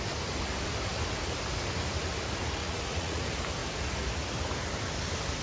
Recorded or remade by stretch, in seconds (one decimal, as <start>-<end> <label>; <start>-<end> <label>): 0.0-2.6 recorded; 2.6-3.2 remade; 3.2-5.4 recorded